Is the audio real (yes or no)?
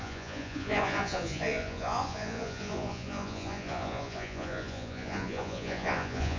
no